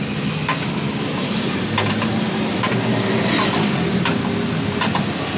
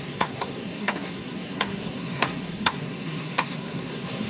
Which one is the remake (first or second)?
second